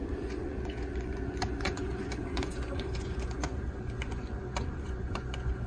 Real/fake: fake